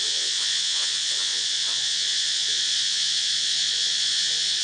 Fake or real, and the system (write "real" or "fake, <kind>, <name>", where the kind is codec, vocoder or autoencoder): fake, vocoder, Vocos